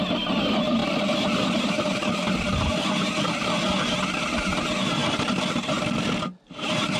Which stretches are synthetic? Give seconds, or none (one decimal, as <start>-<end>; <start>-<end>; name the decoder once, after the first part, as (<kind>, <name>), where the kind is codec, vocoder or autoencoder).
none